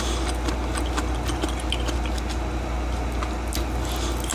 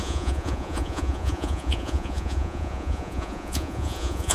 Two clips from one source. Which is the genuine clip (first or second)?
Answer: first